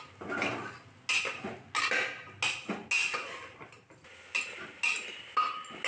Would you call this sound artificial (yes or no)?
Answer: no